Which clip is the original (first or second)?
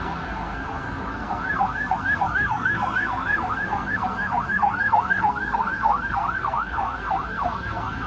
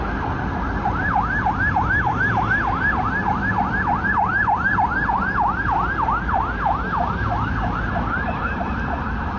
second